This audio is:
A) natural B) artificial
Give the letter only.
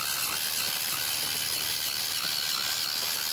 A